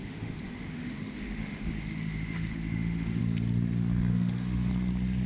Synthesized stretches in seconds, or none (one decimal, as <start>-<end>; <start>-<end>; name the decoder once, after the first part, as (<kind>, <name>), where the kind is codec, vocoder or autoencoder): 0.0-3.2 (autoencoder, DAC-VAE); 4.1-4.7